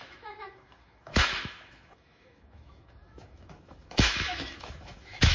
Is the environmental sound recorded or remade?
remade